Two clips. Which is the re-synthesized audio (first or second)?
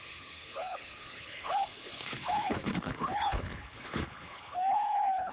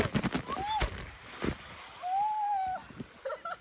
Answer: first